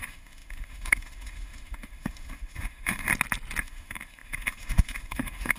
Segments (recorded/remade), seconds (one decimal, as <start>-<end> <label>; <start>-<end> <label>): 0.0-3.1 remade; 3.1-3.6 recorded; 3.6-5.6 remade